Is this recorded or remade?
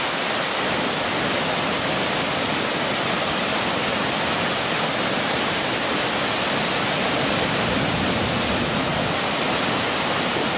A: recorded